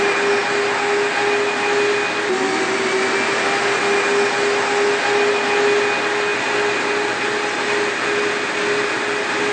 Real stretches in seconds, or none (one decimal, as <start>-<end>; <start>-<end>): 0.0-9.5